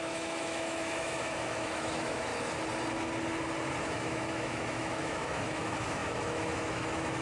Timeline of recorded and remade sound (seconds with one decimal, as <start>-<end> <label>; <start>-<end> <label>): 0.0-2.3 remade; 2.3-3.8 recorded; 3.8-7.2 remade